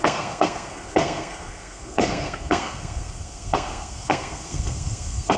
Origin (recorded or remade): remade